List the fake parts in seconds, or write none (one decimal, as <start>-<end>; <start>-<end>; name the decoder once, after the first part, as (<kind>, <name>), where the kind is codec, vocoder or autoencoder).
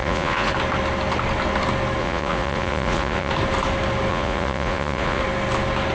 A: 0.0-0.5 (vocoder, Vocos); 2.0-3.3; 4.1-5.2